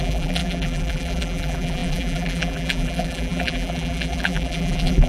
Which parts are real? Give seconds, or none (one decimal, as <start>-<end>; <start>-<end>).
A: none